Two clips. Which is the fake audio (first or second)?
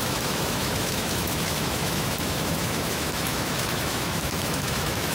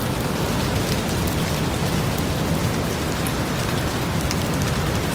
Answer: first